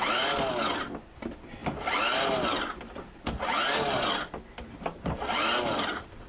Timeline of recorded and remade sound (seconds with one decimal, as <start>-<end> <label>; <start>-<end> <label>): 0.0-6.3 recorded